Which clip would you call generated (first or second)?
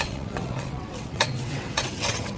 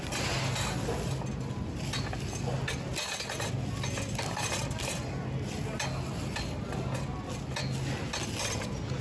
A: first